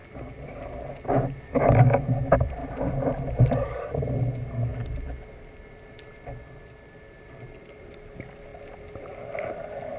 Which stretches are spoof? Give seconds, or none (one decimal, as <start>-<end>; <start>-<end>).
none